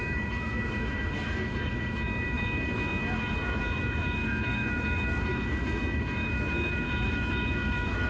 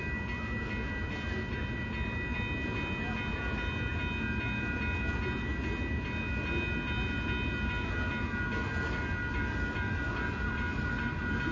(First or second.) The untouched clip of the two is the second